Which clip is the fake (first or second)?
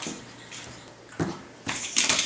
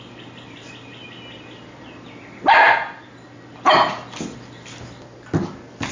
first